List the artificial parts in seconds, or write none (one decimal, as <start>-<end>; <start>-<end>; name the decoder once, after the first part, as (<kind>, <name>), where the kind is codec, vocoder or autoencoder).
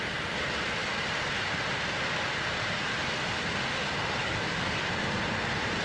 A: 4.2-4.9 (codec, DAC)